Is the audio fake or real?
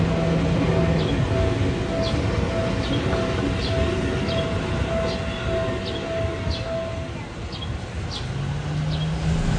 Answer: real